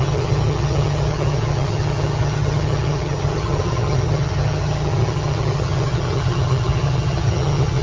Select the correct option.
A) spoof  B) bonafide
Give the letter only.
A